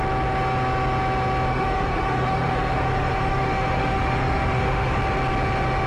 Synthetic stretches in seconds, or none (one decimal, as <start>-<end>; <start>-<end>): 1.5-5.0